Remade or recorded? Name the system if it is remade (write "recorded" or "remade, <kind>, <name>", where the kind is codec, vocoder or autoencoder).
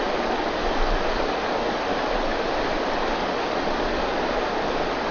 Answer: recorded